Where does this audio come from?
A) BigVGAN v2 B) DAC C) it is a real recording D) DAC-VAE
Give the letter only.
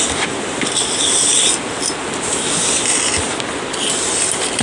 C